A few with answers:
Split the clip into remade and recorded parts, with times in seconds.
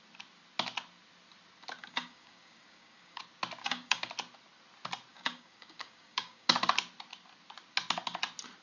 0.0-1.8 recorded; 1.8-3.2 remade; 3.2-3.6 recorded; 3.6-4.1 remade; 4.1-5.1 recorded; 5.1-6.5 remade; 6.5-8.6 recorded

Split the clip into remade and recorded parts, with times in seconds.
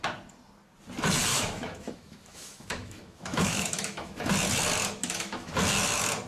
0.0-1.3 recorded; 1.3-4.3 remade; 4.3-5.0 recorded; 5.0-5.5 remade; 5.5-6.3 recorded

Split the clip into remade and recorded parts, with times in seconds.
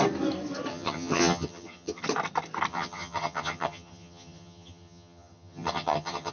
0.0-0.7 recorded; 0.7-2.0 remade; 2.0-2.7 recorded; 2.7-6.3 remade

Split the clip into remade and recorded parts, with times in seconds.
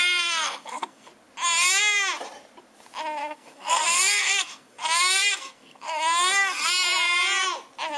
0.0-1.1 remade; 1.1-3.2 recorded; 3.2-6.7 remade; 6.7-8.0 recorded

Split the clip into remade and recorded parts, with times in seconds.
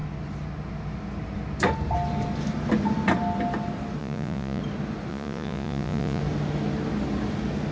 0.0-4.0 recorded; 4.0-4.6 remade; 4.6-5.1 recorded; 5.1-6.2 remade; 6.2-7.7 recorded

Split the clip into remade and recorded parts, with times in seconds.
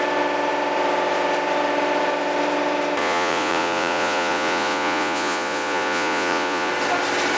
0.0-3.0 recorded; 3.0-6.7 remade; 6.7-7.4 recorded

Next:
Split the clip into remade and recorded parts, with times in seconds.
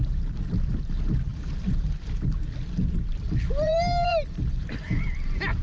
0.0-5.6 remade